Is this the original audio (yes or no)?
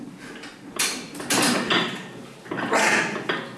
yes